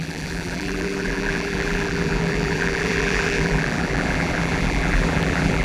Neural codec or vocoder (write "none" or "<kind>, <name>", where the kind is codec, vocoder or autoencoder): vocoder, BigVGAN v2